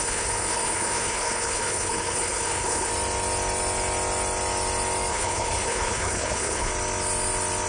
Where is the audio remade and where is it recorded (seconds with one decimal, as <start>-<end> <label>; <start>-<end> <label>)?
0.0-2.9 remade; 2.9-5.1 recorded; 5.1-6.7 remade; 6.7-7.7 recorded